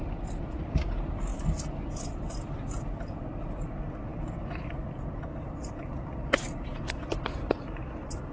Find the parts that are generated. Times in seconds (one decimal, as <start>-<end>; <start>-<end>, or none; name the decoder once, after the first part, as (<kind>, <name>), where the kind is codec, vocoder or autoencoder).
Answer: 4.1-4.7 (vocoder, BigVGAN v2)